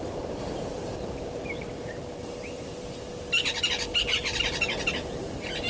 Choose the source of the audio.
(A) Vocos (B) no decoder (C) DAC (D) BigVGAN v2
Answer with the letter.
D